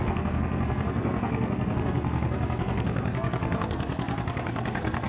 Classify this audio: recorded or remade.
remade